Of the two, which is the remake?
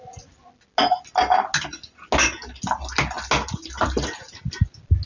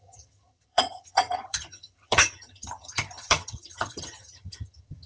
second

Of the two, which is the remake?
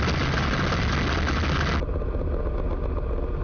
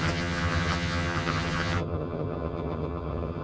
second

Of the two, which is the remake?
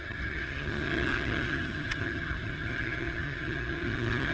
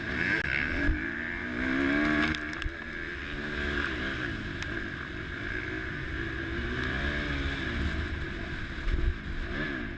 first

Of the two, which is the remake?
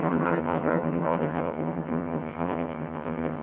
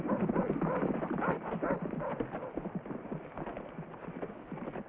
first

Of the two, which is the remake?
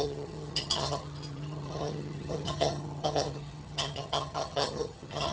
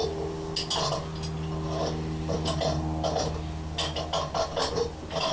first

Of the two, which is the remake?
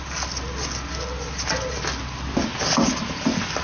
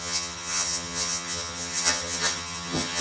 second